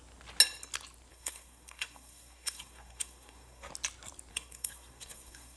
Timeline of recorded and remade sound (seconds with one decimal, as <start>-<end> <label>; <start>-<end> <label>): 0.0-1.1 recorded; 1.1-3.7 remade; 3.7-4.3 recorded; 4.3-5.6 remade